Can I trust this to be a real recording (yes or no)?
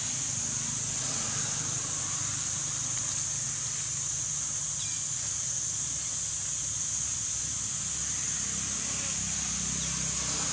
yes